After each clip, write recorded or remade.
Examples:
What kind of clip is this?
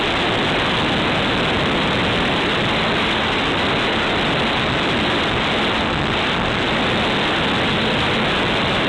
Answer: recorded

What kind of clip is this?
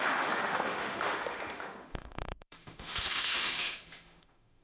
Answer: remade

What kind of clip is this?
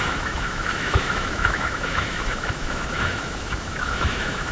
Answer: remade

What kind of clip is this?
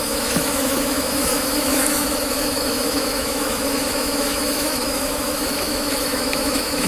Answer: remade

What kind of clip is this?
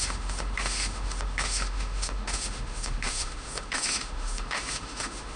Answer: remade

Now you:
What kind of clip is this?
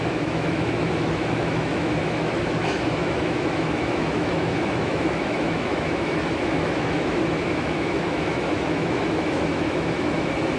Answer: remade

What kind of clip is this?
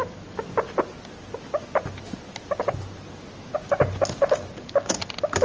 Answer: recorded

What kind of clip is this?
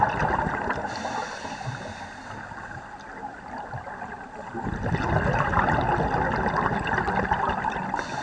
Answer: recorded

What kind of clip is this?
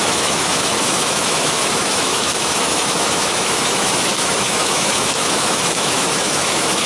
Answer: remade